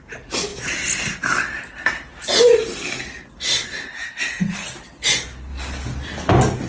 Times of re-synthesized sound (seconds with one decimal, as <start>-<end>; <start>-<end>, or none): none